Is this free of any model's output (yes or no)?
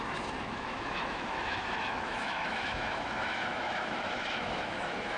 no